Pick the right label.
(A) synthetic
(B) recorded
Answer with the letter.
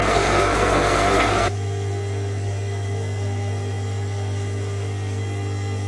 A